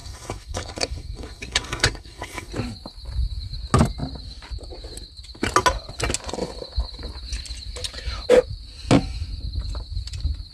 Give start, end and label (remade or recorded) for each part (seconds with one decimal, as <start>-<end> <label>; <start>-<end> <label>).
0.0-2.5 remade; 2.5-10.5 recorded

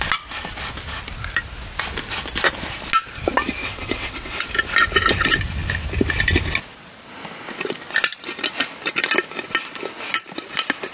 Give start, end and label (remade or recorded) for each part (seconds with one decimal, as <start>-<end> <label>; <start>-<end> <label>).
0.0-3.6 recorded; 3.6-4.5 remade; 4.5-10.9 recorded

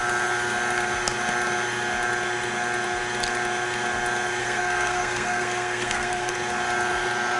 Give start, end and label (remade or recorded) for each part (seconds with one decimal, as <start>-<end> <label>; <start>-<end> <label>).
0.0-4.4 recorded; 4.4-6.3 remade; 6.3-7.4 recorded

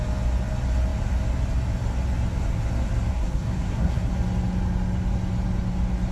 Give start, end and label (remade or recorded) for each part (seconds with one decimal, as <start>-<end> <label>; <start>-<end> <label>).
0.0-3.1 recorded; 3.1-4.1 remade; 4.1-6.1 recorded

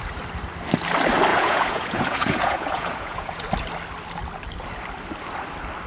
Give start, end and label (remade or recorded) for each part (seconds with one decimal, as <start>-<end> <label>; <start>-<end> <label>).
0.0-1.3 recorded; 1.3-3.5 remade; 3.5-5.9 recorded

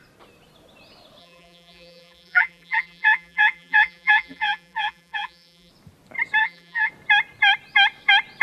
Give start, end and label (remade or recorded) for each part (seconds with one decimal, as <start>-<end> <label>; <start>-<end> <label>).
0.0-1.2 recorded; 1.2-5.7 remade; 5.7-6.4 recorded; 6.4-6.9 remade; 6.9-8.4 recorded

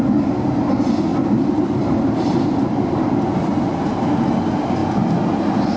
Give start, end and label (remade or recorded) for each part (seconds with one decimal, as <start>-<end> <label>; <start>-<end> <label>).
0.0-1.1 recorded; 1.1-4.2 remade; 4.2-5.8 recorded